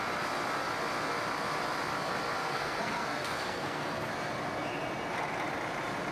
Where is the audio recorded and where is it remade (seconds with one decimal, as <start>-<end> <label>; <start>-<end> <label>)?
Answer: 0.0-2.4 recorded; 2.4-4.1 remade; 4.1-6.1 recorded